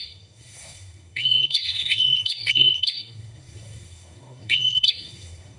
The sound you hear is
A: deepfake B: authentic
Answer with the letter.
A